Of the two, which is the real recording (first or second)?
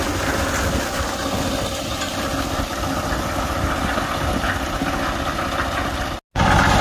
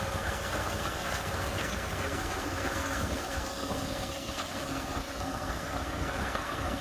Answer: first